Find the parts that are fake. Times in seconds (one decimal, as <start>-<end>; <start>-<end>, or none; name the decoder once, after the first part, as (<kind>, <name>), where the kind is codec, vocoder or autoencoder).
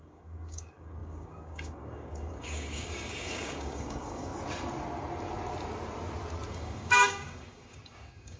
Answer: 0.0-4.3 (codec, DAC); 6.5-8.4